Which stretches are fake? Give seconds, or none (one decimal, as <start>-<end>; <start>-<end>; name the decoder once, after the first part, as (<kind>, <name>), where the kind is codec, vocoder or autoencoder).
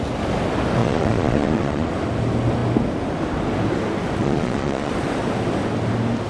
0.8-1.9 (vocoder, Vocos); 4.2-4.9